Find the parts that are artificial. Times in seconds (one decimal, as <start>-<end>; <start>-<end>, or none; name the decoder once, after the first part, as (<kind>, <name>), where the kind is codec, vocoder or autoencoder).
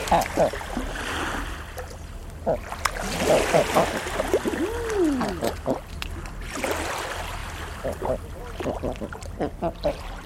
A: none